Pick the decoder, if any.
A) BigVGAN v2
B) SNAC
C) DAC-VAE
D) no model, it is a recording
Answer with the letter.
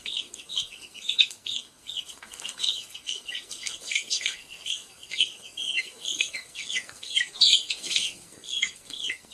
B